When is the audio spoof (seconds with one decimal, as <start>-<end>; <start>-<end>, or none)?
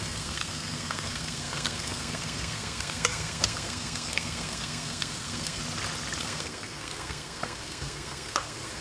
0.0-5.6; 6.2-8.8